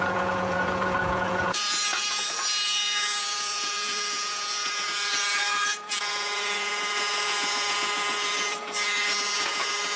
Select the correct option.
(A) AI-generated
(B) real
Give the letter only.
A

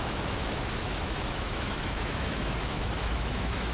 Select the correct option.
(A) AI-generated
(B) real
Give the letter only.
A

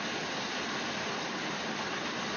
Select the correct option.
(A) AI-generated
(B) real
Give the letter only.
B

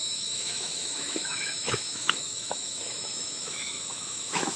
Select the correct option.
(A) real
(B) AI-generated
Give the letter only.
B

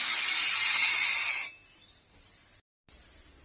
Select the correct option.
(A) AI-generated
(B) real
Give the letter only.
B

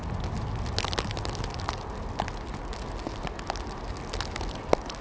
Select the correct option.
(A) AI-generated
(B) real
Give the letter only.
B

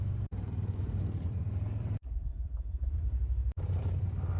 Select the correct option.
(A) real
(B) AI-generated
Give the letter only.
B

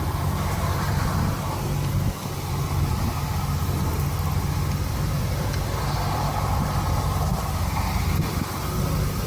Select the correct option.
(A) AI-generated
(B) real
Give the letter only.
B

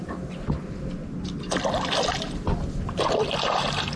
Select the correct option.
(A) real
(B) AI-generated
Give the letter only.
A